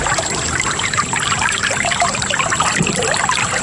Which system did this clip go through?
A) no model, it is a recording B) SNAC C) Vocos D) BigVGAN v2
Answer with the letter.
A